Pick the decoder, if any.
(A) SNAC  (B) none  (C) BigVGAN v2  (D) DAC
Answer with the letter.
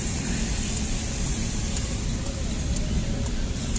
C